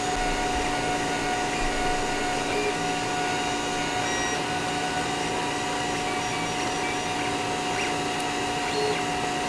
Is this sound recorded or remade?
recorded